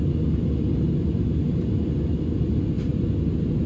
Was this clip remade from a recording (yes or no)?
no